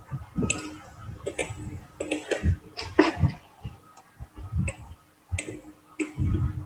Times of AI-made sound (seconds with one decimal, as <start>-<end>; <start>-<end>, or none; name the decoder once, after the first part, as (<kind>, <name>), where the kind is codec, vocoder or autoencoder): 1.4-2.0 (vocoder, BigVGAN v2); 2.7-4.7